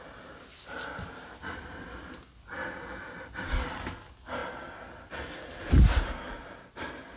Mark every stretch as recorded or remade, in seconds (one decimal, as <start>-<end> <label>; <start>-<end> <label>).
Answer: 0.0-7.2 recorded

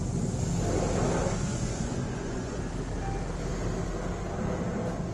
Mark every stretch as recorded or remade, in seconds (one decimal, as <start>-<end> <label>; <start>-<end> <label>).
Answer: 0.0-1.5 recorded; 1.5-2.6 remade; 2.6-5.1 recorded